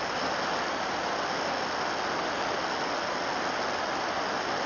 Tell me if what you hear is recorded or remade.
recorded